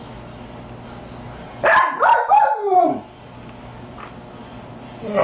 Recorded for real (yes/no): yes